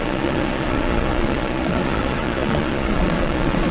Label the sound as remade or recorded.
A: remade